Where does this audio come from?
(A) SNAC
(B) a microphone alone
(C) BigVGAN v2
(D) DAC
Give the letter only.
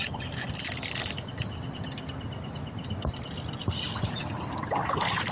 C